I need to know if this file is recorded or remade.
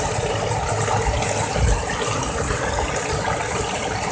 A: recorded